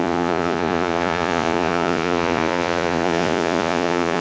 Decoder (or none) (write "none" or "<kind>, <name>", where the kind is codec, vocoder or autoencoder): vocoder, Vocos